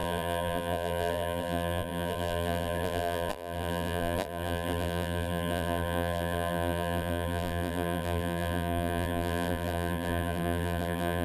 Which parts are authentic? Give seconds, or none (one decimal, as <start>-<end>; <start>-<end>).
none